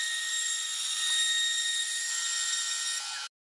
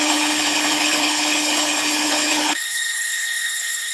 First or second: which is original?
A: first